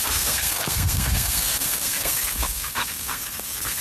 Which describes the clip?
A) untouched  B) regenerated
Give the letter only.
B